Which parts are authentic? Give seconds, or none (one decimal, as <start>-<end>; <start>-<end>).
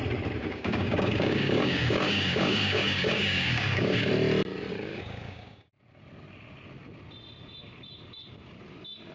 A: 0.0-0.4; 4.1-4.9; 5.7-9.1